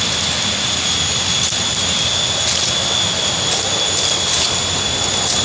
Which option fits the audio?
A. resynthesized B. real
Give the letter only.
B